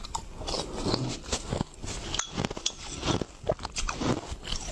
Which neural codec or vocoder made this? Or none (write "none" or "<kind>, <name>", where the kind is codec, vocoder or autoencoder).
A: none